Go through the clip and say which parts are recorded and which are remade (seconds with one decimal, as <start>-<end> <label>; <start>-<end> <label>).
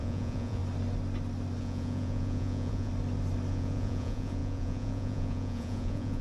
0.0-0.6 remade; 0.6-1.6 recorded; 1.6-2.9 remade; 2.9-3.5 recorded; 3.5-6.2 remade